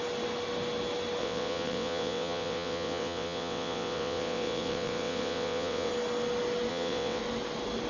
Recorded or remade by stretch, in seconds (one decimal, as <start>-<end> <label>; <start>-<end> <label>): 0.0-1.2 recorded; 1.2-5.9 remade; 5.9-6.7 recorded; 6.7-7.2 remade; 7.2-7.9 recorded